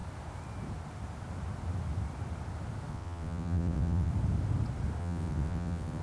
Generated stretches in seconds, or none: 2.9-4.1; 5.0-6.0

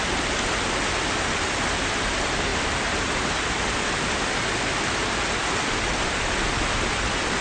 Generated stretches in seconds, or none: none